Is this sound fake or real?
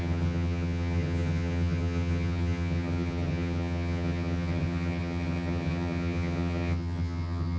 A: fake